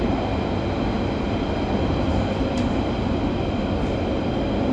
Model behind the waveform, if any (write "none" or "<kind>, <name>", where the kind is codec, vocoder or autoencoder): none